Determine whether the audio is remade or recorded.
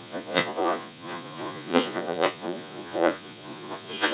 remade